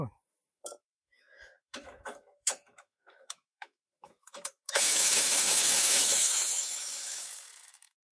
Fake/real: fake